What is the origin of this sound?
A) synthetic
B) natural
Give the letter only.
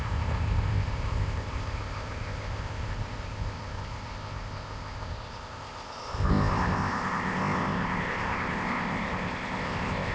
A